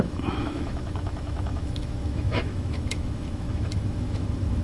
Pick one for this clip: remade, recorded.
remade